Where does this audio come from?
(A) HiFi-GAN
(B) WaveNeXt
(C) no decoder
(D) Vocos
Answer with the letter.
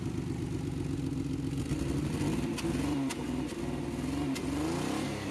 C